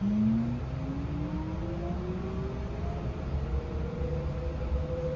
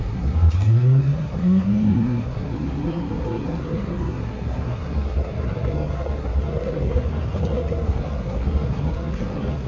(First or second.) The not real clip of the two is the second